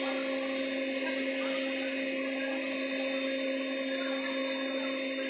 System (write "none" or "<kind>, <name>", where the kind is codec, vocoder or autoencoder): none